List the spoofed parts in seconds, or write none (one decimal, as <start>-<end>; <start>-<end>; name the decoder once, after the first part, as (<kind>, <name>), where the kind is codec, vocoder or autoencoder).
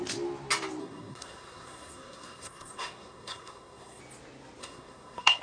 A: 0.8-4.0 (codec, SNAC); 4.6-5.4